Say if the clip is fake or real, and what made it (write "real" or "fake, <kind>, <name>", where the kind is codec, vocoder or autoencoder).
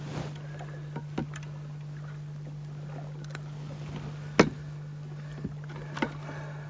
real